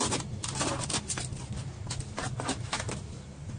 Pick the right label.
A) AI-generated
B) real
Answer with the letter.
B